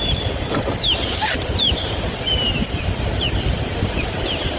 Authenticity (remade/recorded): remade